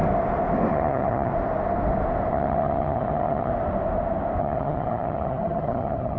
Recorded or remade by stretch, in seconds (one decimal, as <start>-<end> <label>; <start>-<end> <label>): 0.0-0.7 recorded; 0.7-1.3 remade; 1.3-2.3 recorded; 2.3-3.5 remade; 3.5-4.4 recorded; 4.4-6.2 remade